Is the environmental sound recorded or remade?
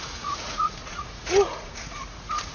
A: remade